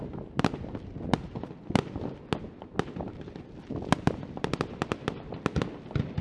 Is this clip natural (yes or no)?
yes